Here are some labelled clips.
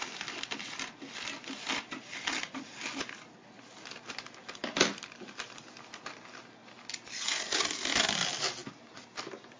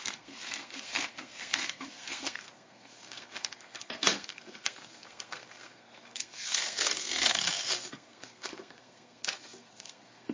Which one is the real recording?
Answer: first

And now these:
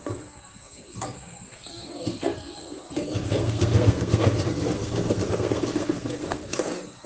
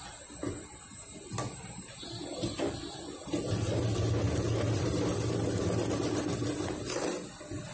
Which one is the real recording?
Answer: second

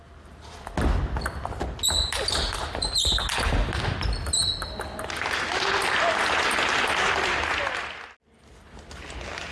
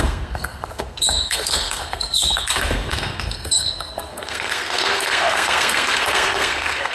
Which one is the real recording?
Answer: first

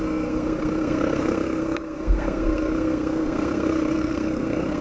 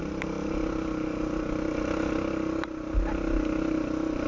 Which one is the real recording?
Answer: second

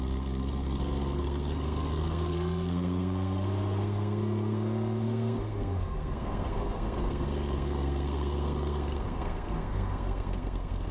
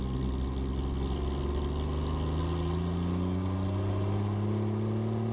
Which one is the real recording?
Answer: second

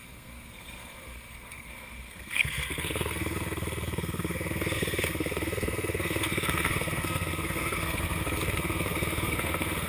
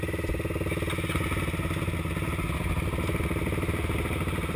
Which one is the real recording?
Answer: second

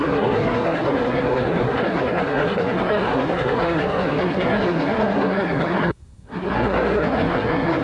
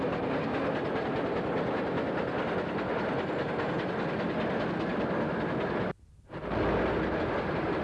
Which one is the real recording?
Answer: second